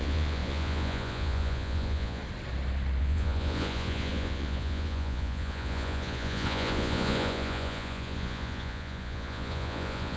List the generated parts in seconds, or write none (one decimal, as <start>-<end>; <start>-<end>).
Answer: 0.0-2.2; 3.0-10.2